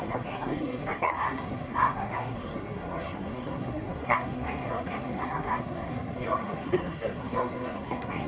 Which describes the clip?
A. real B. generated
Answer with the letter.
B